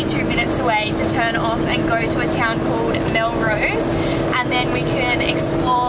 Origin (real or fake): real